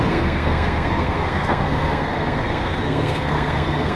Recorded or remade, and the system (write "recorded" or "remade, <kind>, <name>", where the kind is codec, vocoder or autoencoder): remade, codec, SNAC